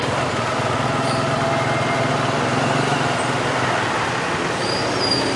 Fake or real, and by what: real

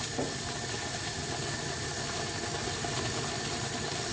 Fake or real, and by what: real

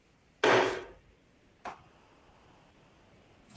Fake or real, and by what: real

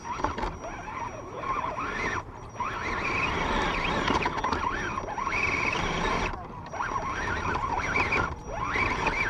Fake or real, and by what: real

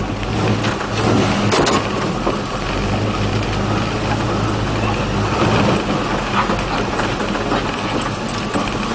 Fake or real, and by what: real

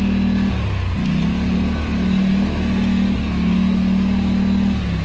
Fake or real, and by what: real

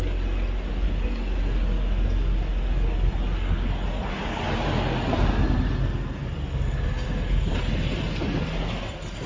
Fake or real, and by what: real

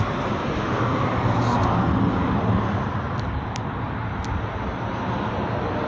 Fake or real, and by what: real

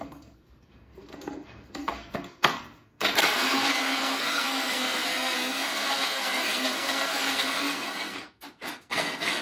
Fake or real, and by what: fake, codec, SNAC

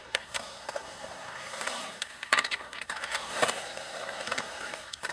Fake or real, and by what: fake, codec, SNAC